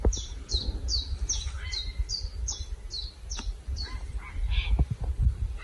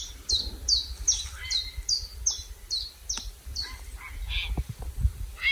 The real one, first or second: second